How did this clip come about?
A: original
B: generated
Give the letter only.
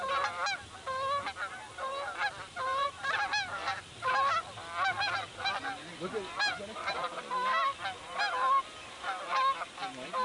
A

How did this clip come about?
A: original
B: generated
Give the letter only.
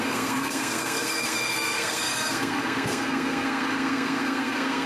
B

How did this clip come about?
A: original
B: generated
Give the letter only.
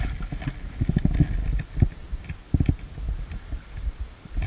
A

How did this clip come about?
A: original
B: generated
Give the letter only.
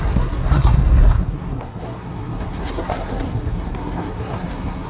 B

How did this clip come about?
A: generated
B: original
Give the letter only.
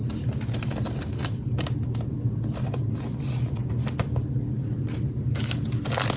B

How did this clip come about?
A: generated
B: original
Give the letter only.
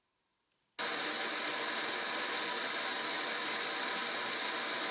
B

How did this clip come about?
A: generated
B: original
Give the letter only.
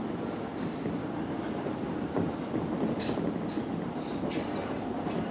B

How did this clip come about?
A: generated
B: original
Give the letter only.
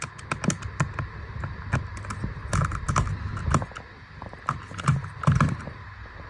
B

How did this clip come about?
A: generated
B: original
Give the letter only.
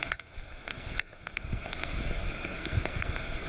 A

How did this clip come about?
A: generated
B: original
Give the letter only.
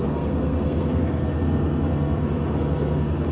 A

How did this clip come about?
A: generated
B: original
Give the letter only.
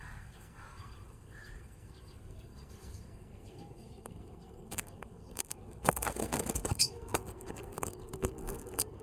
A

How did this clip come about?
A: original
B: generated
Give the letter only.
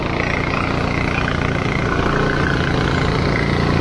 A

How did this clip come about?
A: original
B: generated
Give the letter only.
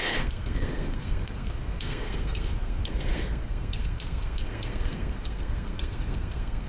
B